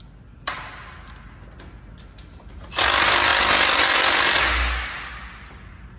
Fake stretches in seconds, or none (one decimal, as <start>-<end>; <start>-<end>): none